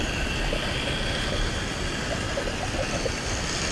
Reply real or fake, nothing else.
real